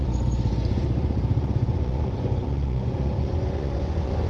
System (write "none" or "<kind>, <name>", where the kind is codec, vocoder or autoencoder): vocoder, Vocos